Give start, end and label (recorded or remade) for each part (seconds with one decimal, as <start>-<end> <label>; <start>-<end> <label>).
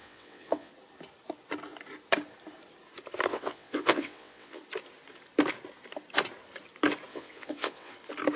0.0-0.7 remade; 0.7-3.3 recorded; 3.3-4.6 remade; 4.6-7.1 recorded; 7.1-7.9 remade; 7.9-8.4 recorded